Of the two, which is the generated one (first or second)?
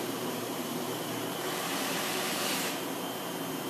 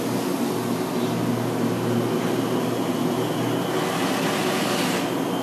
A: first